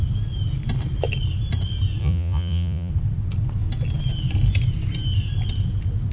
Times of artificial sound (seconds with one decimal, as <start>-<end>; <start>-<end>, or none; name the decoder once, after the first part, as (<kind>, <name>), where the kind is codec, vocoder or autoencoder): 2.0-2.9 (vocoder, Vocos)